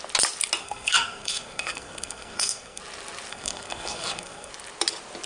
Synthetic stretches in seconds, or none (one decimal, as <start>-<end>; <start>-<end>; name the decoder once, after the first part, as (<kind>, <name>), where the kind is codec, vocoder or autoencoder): 0.6-2.8 (codec, SNAC); 3.3-4.5